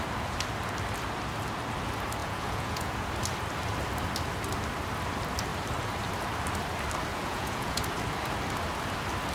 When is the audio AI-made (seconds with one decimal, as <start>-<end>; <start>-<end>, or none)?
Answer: 2.2-3.1; 7.1-7.8